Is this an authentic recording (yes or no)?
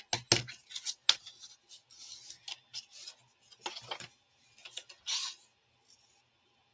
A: yes